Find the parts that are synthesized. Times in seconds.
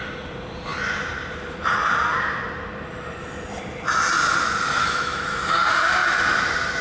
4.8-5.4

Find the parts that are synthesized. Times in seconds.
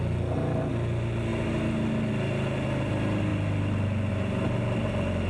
none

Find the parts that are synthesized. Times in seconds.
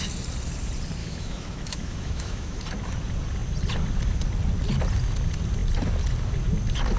1.0-2.6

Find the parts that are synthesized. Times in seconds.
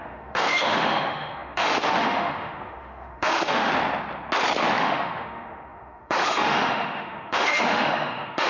0.0-3.7; 4.8-8.5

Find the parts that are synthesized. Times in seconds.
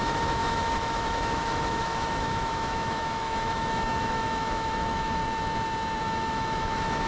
0.0-5.2; 6.0-7.1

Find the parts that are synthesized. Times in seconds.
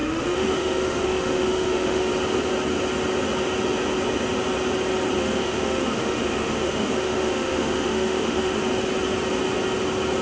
0.0-2.1; 5.2-8.6